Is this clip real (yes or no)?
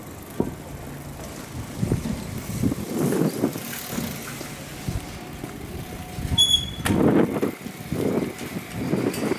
yes